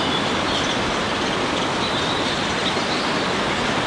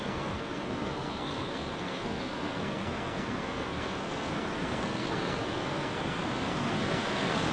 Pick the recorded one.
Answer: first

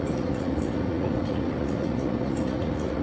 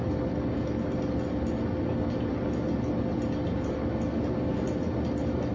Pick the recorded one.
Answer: second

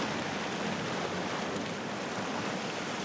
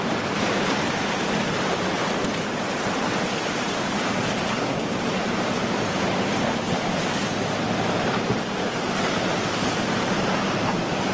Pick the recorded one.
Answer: first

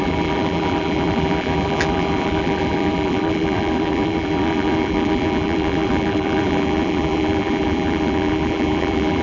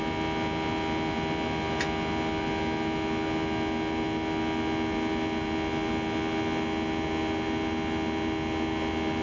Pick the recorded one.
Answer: second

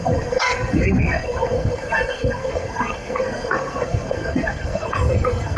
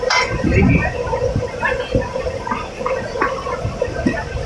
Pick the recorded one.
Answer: second